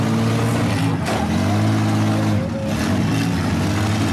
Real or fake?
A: real